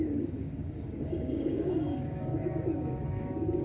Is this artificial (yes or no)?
yes